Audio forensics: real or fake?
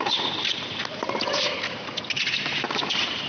fake